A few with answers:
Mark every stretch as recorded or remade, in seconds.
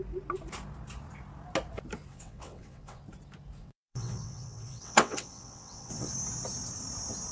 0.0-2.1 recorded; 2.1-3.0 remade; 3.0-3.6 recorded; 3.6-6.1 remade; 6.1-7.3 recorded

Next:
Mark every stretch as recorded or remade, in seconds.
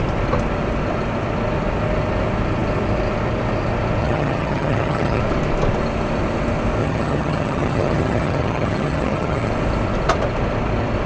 0.0-4.0 recorded; 4.0-5.2 remade; 5.2-6.8 recorded; 6.8-9.5 remade; 9.5-11.1 recorded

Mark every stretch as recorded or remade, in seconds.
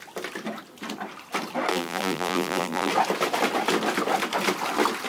0.0-1.7 recorded; 1.7-2.9 remade; 2.9-5.1 recorded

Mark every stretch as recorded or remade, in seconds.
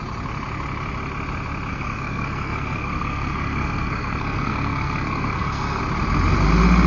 0.0-1.7 recorded; 1.7-5.8 remade; 5.8-6.9 recorded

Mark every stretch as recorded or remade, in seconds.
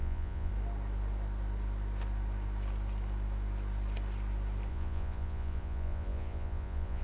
0.0-0.5 remade; 0.5-4.7 recorded; 4.7-7.0 remade